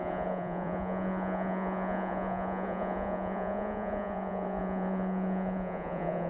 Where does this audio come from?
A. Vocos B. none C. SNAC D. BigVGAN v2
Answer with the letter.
A